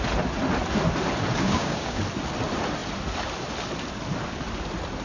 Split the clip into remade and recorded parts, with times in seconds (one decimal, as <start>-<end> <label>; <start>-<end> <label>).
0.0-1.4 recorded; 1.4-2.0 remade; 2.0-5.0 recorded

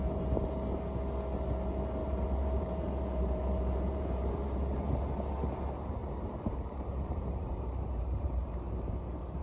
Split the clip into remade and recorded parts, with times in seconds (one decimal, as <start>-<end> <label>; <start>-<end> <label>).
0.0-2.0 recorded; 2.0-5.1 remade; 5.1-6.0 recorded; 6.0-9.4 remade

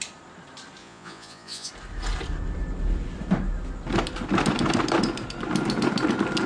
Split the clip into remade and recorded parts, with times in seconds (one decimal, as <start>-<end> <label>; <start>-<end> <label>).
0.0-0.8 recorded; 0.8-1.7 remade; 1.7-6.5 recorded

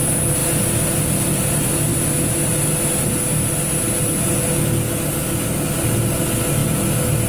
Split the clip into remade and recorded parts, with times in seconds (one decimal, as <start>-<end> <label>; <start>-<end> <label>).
0.0-7.3 recorded

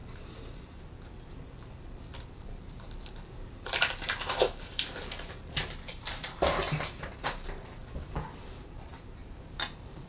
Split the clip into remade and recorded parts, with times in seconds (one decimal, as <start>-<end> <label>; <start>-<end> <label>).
0.0-10.1 remade

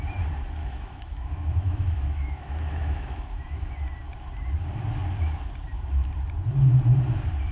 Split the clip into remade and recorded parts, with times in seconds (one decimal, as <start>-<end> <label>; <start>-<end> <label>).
0.0-0.6 recorded; 0.6-3.7 remade; 3.7-7.5 recorded

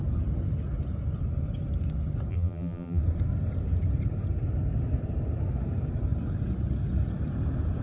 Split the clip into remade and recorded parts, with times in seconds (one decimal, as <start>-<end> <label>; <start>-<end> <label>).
0.0-2.3 recorded; 2.3-3.0 remade; 3.0-7.8 recorded

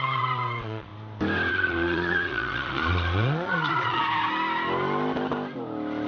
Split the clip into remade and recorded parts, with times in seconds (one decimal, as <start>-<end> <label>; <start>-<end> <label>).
0.0-0.9 remade; 0.9-1.5 recorded; 1.5-4.0 remade; 4.0-6.1 recorded